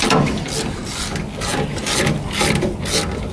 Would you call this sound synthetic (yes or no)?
no